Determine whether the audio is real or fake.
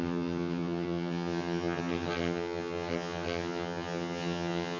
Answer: fake